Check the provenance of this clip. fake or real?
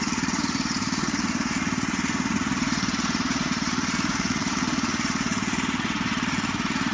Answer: fake